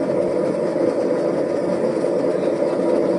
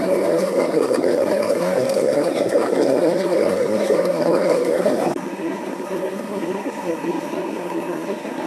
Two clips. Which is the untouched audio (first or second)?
first